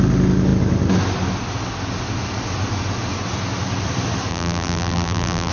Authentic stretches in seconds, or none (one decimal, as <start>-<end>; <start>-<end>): 0.0-4.3